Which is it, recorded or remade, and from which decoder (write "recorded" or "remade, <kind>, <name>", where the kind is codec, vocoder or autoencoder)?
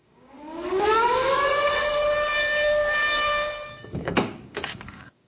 remade, codec, DAC